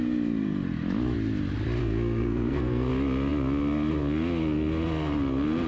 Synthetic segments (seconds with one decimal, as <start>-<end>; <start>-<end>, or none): 1.8-2.9